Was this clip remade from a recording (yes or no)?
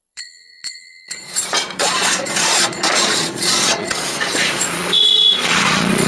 yes